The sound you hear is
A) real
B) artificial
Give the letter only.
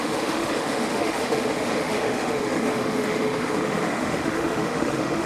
B